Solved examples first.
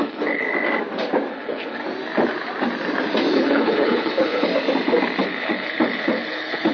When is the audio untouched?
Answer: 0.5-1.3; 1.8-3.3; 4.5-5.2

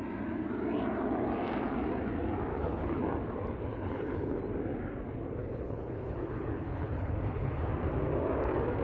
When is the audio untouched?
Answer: 0.0-2.5; 3.0-3.7; 4.4-5.4; 7.7-8.8

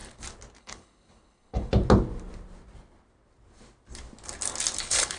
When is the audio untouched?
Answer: 0.0-0.6; 1.7-4.8

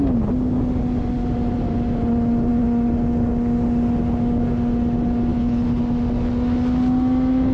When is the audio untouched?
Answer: 0.0-5.3; 5.8-7.5

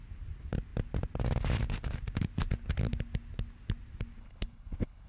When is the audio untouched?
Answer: 0.0-4.2

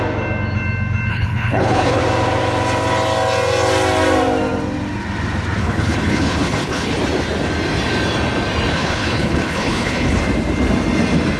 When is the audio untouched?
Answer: 0.0-1.1; 2.0-5.6; 7.0-8.7; 10.2-11.4

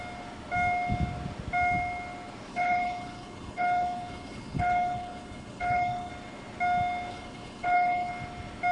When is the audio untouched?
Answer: 0.0-2.5; 6.1-7.1; 8.1-8.7

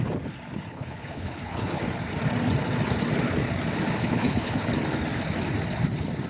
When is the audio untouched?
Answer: 0.0-0.7; 1.8-4.0; 4.7-6.3